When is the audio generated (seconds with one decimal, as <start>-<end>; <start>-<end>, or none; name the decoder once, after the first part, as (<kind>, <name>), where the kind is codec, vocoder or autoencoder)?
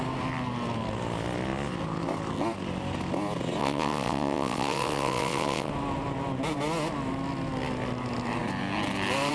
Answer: 3.6-5.7 (vocoder, WaveNeXt)